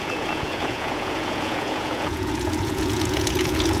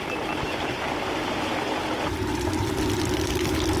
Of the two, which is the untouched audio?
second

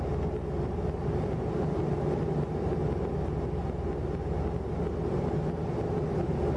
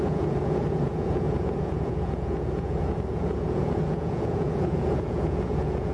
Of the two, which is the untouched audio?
first